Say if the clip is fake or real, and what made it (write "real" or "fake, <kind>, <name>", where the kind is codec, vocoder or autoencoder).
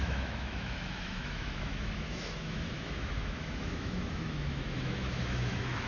fake, autoencoder, DAC-VAE